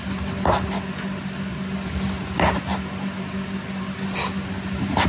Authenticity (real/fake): real